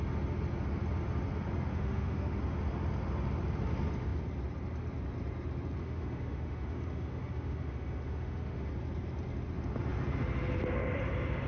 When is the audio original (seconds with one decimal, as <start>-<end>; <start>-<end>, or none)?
0.0-1.7; 2.4-5.8; 8.7-11.5